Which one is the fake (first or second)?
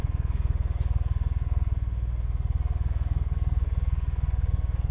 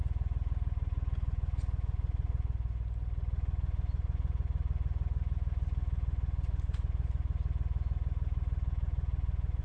first